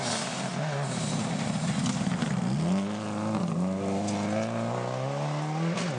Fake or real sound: real